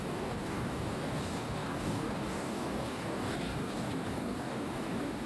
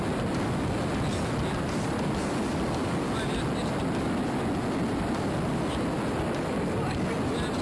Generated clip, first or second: first